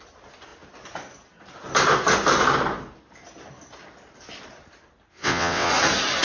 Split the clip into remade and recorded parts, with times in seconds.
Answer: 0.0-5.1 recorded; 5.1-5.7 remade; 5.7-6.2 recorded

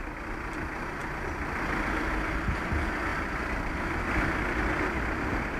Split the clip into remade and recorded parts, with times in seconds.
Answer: 0.0-5.6 recorded

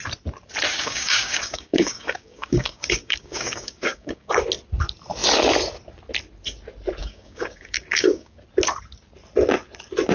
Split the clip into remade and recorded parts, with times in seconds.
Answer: 0.0-0.7 recorded; 0.7-4.4 remade; 4.4-7.0 recorded; 7.0-8.4 remade; 8.4-10.1 recorded

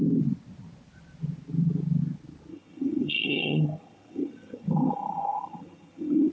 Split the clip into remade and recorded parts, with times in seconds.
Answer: 0.0-2.5 recorded; 2.5-6.3 remade